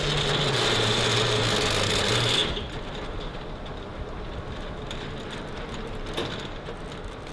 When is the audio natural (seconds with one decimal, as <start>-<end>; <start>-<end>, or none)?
0.0-7.3